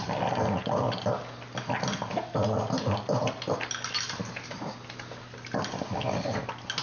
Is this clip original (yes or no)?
yes